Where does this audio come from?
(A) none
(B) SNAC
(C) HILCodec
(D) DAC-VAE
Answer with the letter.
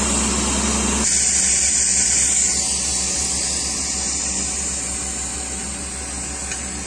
A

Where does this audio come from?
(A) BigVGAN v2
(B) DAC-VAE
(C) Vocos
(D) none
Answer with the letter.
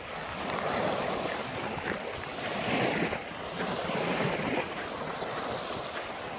D